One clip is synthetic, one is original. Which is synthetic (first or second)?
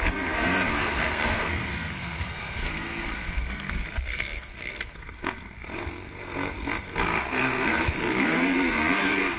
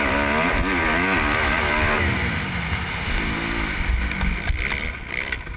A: first